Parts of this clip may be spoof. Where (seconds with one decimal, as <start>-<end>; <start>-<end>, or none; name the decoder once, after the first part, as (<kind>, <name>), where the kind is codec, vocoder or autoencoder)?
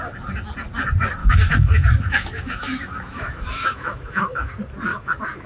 1.2-4.5 (autoencoder, DAC-VAE); 4.9-5.5